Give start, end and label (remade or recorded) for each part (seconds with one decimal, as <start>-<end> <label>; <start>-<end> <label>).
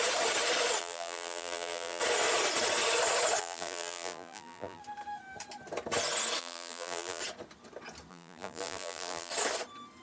0.0-0.8 recorded; 0.8-2.0 remade; 2.0-3.4 recorded; 3.4-4.8 remade; 4.8-6.4 recorded; 6.4-7.2 remade; 7.2-8.1 recorded; 8.1-9.3 remade; 9.3-10.0 recorded